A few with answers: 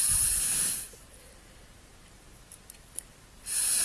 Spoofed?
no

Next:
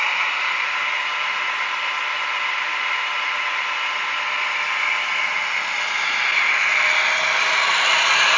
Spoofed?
no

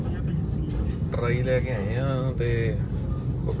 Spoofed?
no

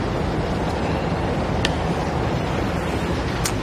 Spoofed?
no